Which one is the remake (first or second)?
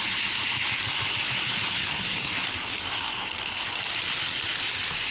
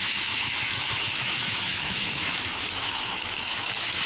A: second